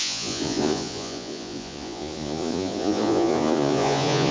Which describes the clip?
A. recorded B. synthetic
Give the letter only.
B